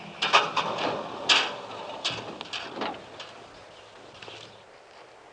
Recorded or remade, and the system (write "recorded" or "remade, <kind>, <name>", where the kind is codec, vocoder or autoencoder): recorded